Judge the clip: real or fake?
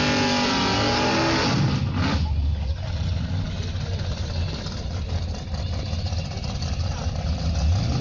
real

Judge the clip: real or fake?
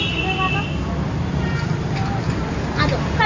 real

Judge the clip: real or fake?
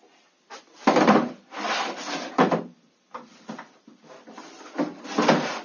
fake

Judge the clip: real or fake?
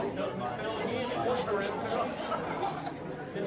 real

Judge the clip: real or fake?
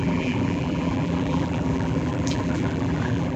fake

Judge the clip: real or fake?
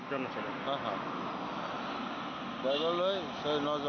real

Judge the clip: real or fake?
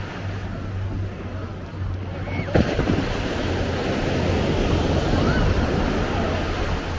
real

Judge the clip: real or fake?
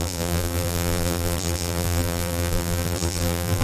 fake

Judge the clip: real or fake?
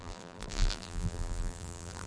fake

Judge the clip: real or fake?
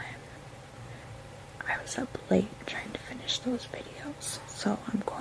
fake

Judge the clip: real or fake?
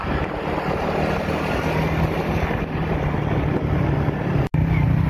real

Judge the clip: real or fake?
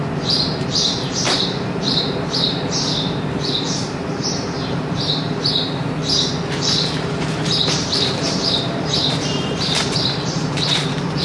fake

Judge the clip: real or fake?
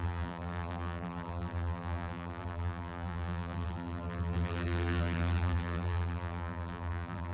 fake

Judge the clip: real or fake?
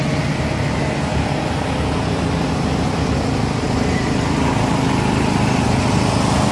real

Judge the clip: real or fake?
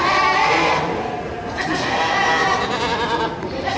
real